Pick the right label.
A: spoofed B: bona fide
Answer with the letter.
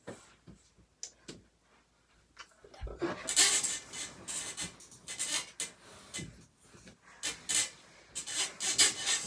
B